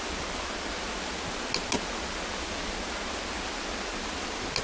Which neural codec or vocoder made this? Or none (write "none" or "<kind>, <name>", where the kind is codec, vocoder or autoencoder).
none